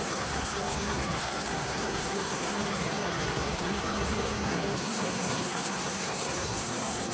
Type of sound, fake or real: fake